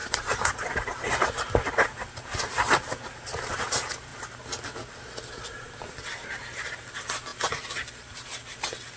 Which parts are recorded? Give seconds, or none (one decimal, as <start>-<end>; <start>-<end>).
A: 1.3-9.0